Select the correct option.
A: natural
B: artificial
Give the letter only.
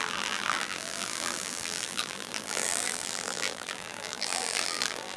B